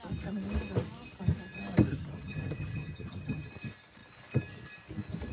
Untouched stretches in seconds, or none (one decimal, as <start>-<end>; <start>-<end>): 0.0-1.9; 3.5-5.3